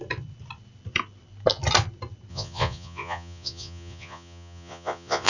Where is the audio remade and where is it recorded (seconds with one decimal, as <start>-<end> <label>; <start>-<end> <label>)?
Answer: 0.0-2.3 recorded; 2.3-5.3 remade